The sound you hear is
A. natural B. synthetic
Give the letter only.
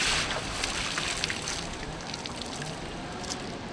A